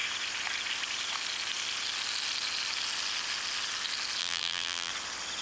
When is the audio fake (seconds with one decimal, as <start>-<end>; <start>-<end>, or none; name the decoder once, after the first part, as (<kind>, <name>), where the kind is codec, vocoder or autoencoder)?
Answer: 4.2-4.9 (vocoder, BigVGAN v2)